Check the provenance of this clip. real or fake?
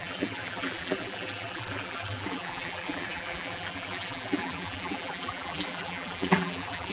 fake